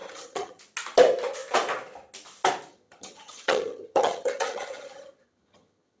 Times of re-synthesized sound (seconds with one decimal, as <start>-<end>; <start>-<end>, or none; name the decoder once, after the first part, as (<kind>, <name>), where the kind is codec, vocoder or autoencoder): 0.0-0.6 (vocoder, HiFi-GAN); 2.7-6.0